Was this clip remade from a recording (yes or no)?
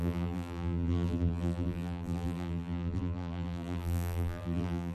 yes